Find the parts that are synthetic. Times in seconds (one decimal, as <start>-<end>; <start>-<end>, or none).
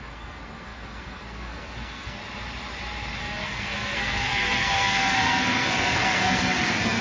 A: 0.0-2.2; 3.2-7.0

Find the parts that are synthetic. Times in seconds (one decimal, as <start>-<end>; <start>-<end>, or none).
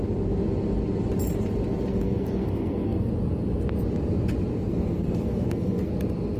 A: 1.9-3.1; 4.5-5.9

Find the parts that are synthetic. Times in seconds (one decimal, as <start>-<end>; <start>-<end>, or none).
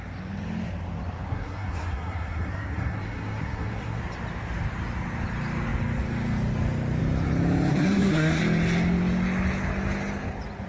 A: 1.3-4.0; 7.7-8.4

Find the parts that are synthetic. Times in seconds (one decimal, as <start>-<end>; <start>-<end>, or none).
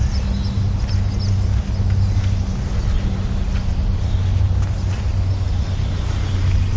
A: none